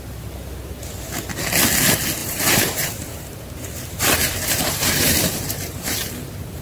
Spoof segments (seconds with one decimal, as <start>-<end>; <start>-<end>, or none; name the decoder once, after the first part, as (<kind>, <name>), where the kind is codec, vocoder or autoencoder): 2.2-6.1 (vocoder, BigVGAN v2)